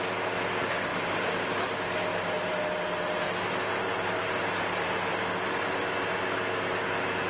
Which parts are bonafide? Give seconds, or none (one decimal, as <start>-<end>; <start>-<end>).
0.0-0.9; 1.6-2.1; 2.6-3.9; 5.1-7.3